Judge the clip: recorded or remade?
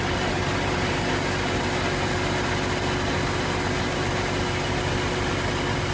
recorded